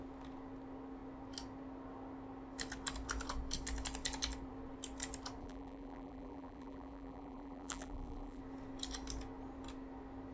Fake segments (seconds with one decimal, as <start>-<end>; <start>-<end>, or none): 5.4-8.4